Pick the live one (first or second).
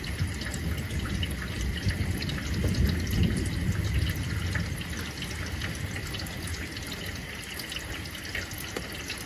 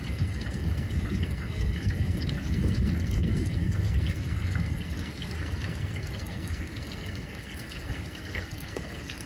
first